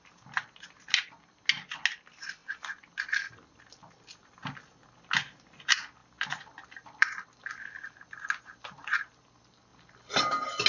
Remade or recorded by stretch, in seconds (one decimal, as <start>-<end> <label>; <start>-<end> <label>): 0.0-6.0 recorded; 6.0-7.5 remade; 7.5-10.7 recorded